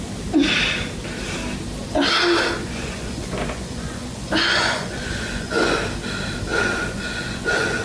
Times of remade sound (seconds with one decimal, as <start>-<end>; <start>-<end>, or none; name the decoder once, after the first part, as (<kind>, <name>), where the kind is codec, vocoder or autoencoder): 2.6-5.8 (vocoder, Vocos); 6.5-7.8